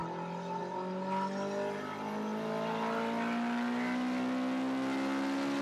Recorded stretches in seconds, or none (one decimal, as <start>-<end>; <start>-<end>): 0.0-5.6

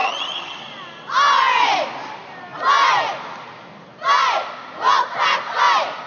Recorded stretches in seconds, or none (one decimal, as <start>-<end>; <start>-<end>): 0.6-6.1

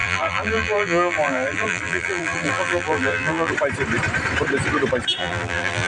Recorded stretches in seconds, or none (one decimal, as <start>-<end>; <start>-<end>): 3.5-5.2

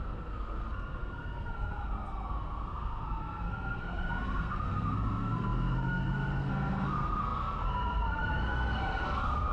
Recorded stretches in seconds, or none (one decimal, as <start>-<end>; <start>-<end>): none

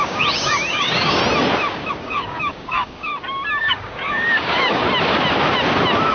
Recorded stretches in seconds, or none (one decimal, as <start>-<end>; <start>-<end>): 1.2-1.9; 3.1-3.6; 4.8-6.1

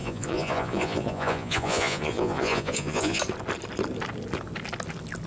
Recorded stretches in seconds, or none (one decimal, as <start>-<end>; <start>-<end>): 3.2-5.3